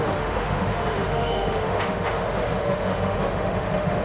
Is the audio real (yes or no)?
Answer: no